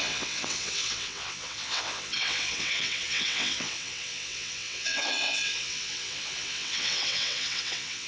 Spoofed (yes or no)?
yes